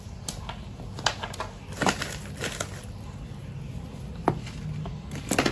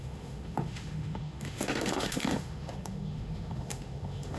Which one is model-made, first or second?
second